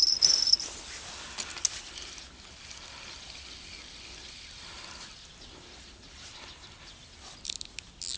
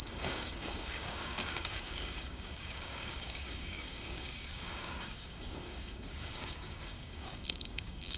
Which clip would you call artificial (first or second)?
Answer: second